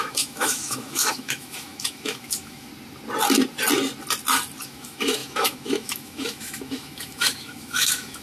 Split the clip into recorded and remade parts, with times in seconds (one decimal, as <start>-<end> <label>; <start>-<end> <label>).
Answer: 0.0-2.7 remade; 2.7-4.6 recorded; 4.6-8.2 remade